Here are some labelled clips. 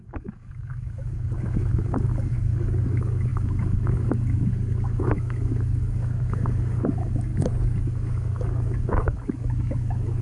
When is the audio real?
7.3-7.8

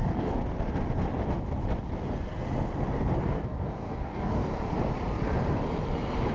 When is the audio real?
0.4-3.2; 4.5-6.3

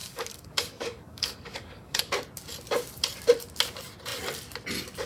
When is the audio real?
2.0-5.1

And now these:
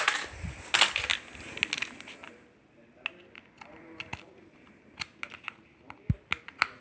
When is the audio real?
0.0-6.8

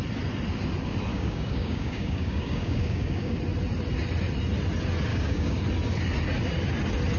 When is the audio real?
0.0-1.1; 3.4-5.1; 5.6-7.2